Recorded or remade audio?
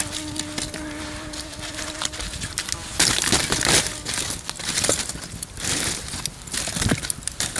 recorded